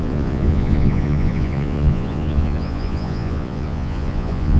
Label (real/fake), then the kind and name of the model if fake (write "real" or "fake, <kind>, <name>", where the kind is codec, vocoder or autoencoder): fake, vocoder, Vocos